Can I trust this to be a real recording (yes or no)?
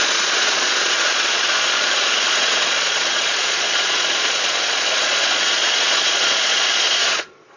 no